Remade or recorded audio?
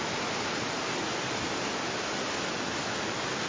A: recorded